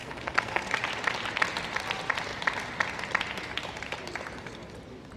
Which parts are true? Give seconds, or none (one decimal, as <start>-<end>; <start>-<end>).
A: 0.8-5.2